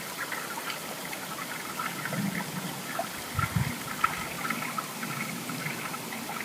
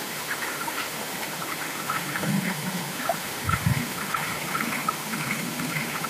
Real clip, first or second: first